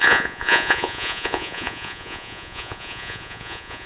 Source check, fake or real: fake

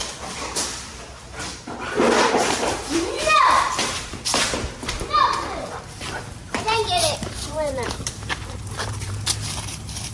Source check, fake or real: fake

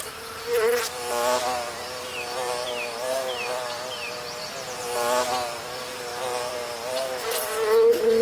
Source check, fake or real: real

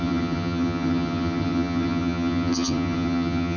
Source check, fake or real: fake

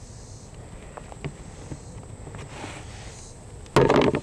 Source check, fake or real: real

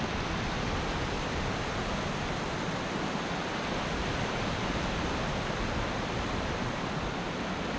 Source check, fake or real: real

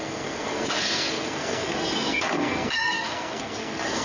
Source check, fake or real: fake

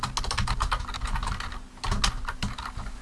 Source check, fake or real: real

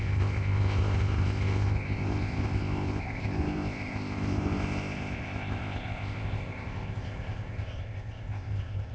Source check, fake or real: fake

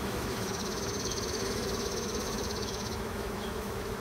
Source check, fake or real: fake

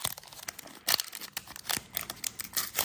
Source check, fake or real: real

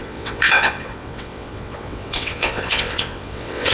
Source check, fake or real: fake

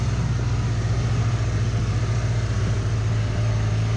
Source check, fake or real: real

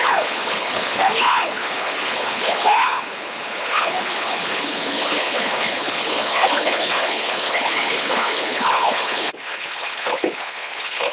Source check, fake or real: fake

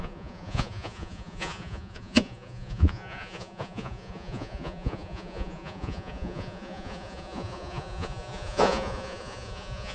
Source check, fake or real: fake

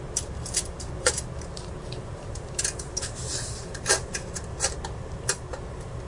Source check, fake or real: fake